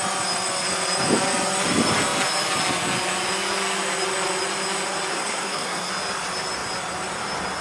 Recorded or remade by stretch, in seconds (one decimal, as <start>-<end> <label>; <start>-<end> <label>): 0.0-5.1 recorded; 5.1-5.9 remade; 5.9-7.6 recorded